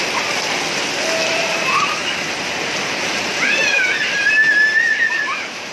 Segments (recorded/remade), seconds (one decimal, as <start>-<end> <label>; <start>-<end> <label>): 0.0-1.3 recorded; 1.3-2.0 remade; 2.0-5.1 recorded; 5.1-5.7 remade